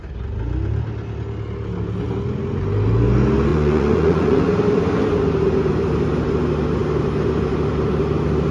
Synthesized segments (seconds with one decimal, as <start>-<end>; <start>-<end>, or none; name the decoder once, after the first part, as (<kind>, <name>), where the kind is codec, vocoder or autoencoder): 3.5-4.4 (vocoder, Vocos)